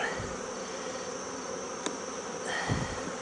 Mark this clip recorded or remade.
recorded